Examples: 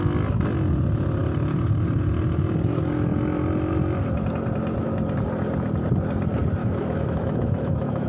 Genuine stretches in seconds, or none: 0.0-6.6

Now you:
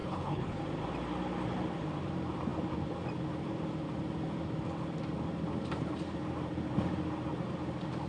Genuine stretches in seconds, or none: 0.6-8.1

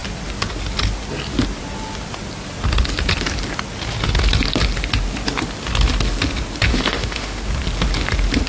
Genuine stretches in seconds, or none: 0.0-6.7; 7.4-8.5